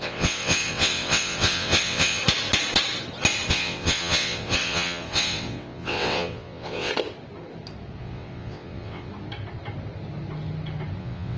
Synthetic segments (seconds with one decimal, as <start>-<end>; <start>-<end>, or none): 0.0-2.2; 3.5-6.9; 8.0-9.1; 11.0-11.4